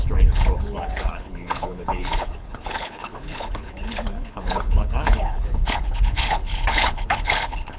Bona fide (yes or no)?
no